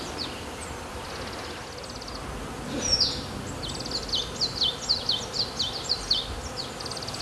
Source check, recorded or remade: recorded